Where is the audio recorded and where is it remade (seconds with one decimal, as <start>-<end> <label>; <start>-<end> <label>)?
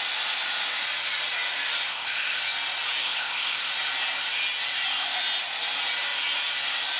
0.0-1.9 recorded; 1.9-2.4 remade; 2.4-3.0 recorded; 3.0-3.7 remade; 3.7-7.0 recorded